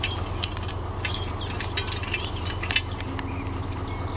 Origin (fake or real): real